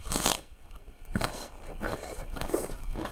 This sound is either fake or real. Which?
fake